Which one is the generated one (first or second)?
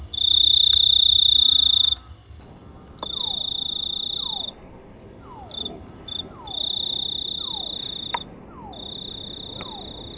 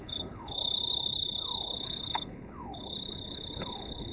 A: second